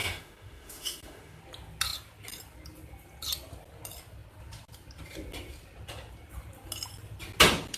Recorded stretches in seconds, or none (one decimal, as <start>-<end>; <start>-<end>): 1.4-7.8